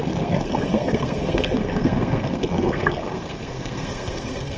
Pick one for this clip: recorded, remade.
remade